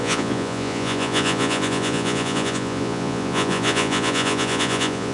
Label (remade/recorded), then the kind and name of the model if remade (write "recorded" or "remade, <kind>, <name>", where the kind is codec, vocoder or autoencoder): remade, vocoder, Vocos